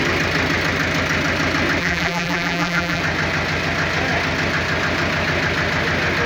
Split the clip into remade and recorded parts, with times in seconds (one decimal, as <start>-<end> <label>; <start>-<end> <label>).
0.0-1.8 recorded; 1.8-3.0 remade; 3.0-6.3 recorded